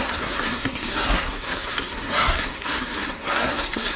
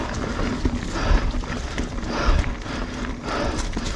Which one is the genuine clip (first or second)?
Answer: second